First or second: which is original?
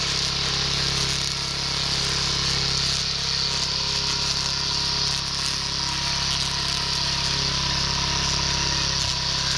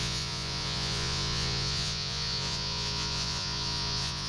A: first